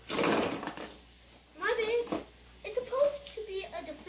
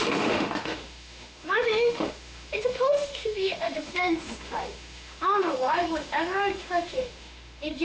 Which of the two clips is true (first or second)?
first